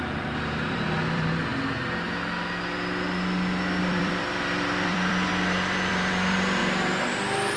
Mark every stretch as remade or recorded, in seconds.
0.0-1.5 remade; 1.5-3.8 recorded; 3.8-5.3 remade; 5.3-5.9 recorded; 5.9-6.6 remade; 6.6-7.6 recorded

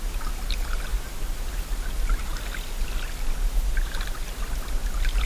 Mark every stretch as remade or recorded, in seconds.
0.0-5.3 recorded

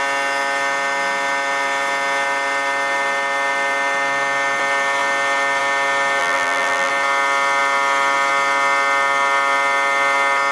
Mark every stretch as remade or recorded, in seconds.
0.0-6.2 recorded; 6.2-6.9 remade; 6.9-10.5 recorded